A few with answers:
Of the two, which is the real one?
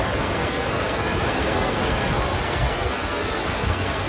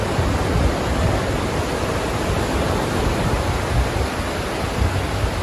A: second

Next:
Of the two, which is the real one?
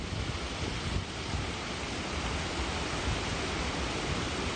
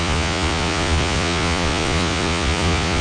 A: first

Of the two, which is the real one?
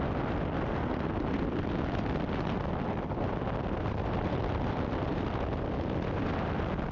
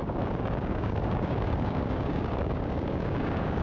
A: first